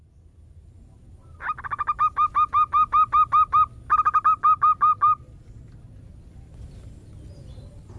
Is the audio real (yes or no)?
yes